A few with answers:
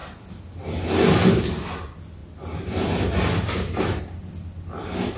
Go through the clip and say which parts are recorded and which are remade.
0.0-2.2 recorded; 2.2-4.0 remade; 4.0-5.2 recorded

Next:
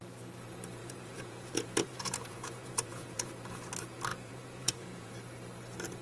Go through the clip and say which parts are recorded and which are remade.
0.0-0.8 recorded; 0.8-3.3 remade; 3.3-4.1 recorded; 4.1-5.1 remade; 5.1-6.0 recorded

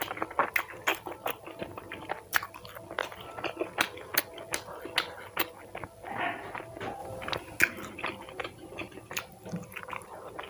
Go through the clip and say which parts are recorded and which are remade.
0.0-0.9 recorded; 0.9-2.0 remade; 2.0-10.5 recorded

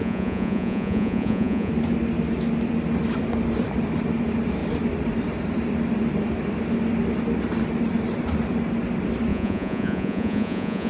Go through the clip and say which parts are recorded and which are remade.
0.0-1.7 remade; 1.7-9.3 recorded; 9.3-10.9 remade

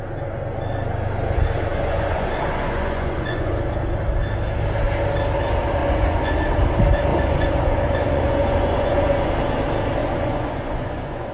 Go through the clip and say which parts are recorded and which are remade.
0.0-1.7 recorded; 1.7-3.5 remade; 3.5-5.8 recorded; 5.8-6.3 remade; 6.3-7.1 recorded; 7.1-9.3 remade; 9.3-10.0 recorded; 10.0-11.3 remade

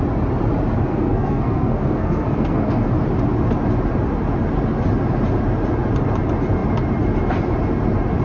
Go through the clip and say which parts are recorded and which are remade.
0.0-0.9 recorded; 0.9-2.9 remade; 2.9-8.2 recorded